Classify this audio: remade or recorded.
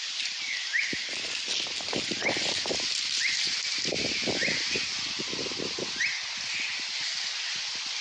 recorded